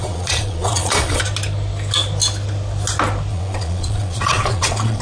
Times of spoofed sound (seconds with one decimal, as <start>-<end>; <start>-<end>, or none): 0.0-1.2; 3.3-5.0